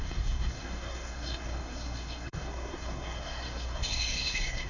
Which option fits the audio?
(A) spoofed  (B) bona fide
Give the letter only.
A